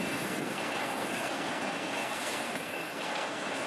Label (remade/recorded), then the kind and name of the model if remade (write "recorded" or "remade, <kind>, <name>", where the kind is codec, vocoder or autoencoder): remade, codec, SNAC